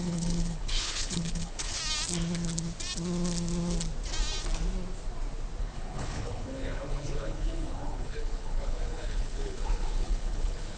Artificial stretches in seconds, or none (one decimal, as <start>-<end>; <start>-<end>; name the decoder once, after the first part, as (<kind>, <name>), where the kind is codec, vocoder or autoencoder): 0.0-1.8 (codec, HILCodec); 5.6-10.8